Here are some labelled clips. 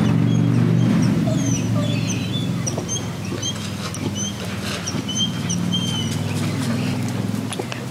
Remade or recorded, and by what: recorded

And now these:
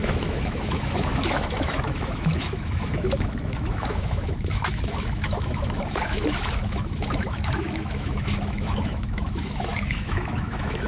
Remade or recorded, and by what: remade, autoencoder, DAC-VAE